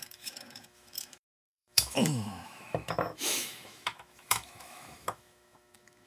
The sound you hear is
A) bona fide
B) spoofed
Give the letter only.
B